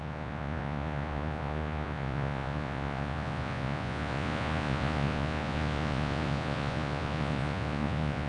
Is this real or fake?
fake